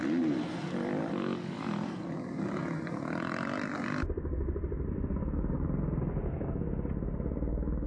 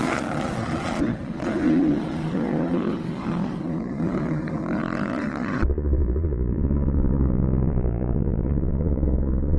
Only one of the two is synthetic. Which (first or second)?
second